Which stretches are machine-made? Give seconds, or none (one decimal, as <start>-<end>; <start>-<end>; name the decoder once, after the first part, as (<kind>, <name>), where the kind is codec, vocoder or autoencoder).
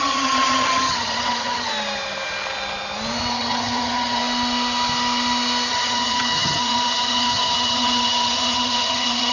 0.0-1.7 (vocoder, HiFi-GAN); 3.3-4.2; 5.7-9.3